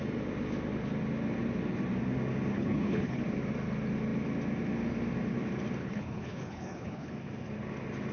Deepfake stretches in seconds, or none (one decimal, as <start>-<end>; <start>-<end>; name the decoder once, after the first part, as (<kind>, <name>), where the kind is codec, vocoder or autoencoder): 2.5-3.2 (codec, HILCodec); 5.8-7.1